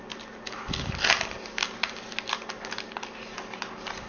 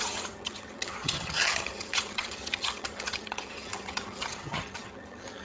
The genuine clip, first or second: first